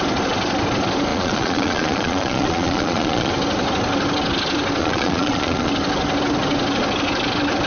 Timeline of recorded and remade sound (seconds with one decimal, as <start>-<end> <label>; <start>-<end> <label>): 0.0-1.1 recorded; 1.1-3.3 remade; 3.3-4.8 recorded; 4.8-5.7 remade; 5.7-7.7 recorded